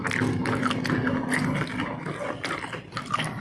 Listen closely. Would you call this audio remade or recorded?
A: recorded